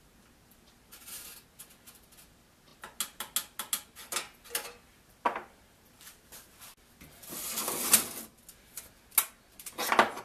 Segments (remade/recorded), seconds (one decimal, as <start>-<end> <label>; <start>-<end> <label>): 0.0-10.2 recorded